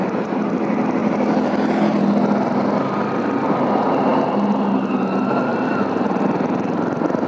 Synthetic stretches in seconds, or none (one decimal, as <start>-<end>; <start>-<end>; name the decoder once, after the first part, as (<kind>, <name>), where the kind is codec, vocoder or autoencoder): 1.0-2.1 (vocoder, BigVGAN v2); 5.5-6.2